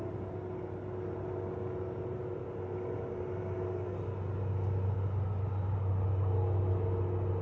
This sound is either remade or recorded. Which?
recorded